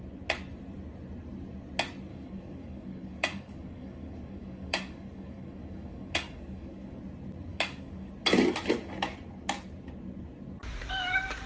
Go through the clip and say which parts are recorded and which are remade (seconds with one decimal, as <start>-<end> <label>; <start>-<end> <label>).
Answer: 0.0-2.1 recorded; 2.1-7.0 remade; 7.0-7.5 recorded; 7.5-8.1 remade; 8.1-11.5 recorded